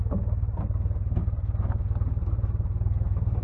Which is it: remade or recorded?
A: recorded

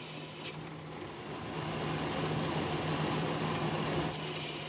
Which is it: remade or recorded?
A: recorded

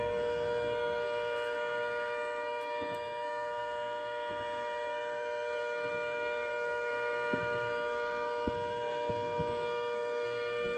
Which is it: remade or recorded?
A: remade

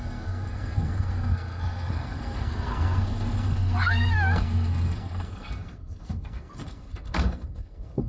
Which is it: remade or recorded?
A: remade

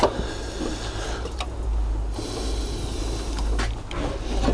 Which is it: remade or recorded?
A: recorded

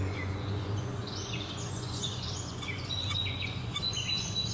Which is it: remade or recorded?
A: remade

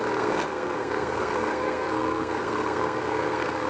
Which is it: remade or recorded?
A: remade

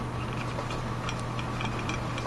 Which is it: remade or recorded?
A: recorded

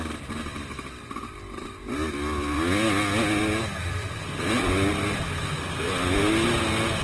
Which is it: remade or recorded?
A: recorded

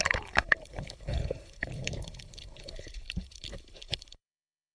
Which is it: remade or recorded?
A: remade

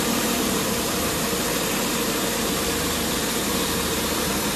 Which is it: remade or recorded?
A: remade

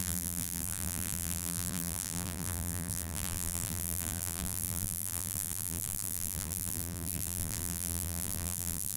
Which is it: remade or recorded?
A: remade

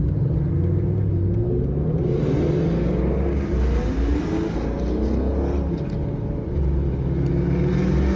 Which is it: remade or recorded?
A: recorded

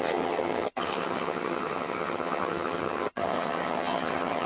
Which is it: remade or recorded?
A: remade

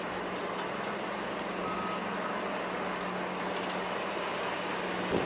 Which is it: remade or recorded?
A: recorded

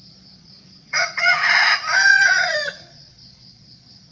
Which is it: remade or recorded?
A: remade